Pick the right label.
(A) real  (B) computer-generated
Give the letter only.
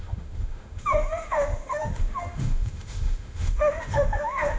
B